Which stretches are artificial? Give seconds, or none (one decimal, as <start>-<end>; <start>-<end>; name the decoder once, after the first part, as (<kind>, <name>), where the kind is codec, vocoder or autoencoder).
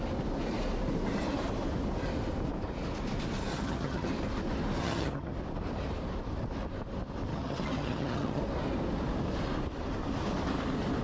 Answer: 3.5-4.1 (vocoder, HiFi-GAN); 4.8-5.3; 7.3-8.4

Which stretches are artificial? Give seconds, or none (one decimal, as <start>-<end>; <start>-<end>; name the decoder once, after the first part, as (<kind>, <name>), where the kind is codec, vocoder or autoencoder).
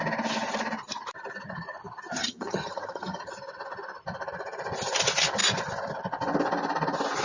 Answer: 2.2-3.3 (vocoder, HiFi-GAN)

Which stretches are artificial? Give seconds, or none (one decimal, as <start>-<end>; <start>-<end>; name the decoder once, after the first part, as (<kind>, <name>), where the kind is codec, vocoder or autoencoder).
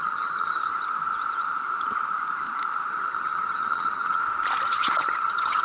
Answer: 0.0-0.7 (vocoder, HiFi-GAN); 2.9-4.2; 4.7-5.6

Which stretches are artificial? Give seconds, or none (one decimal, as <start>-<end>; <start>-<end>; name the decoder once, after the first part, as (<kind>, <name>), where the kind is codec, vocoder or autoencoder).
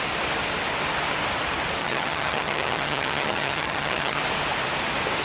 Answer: 1.8-4.2 (vocoder, HiFi-GAN)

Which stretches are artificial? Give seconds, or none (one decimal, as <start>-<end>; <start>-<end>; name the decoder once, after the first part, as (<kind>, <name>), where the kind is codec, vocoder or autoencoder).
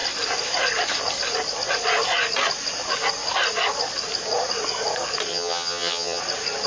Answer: 5.3-6.2 (vocoder, HiFi-GAN)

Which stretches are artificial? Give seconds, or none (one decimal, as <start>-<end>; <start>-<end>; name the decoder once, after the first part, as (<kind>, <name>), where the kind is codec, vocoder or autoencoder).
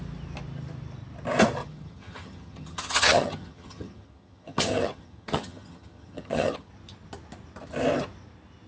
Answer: 1.6-6.7 (vocoder, HiFi-GAN)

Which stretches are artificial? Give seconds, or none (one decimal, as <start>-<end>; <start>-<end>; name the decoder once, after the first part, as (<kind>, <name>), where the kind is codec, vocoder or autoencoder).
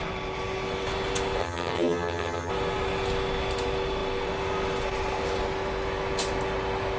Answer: 1.4-2.5 (vocoder, HiFi-GAN)